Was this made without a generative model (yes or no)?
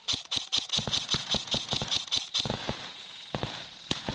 no